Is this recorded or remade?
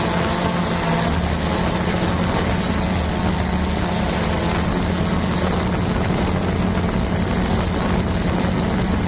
recorded